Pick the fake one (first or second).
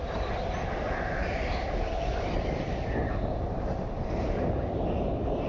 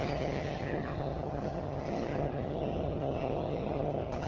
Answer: second